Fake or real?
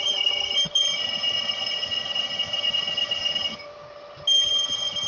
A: real